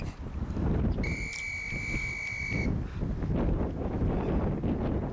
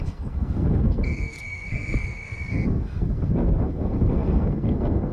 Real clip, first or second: first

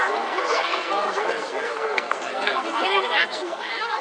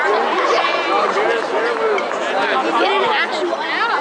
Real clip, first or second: second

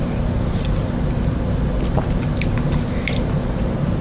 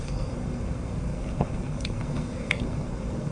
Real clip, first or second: first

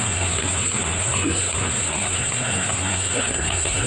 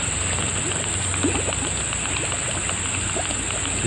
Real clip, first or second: second